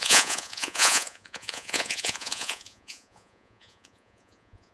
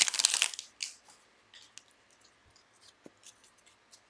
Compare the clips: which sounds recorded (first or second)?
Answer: second